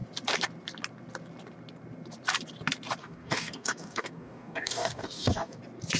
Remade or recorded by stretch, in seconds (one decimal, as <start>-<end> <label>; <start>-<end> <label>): 0.0-3.0 recorded; 3.0-5.6 remade; 5.6-6.0 recorded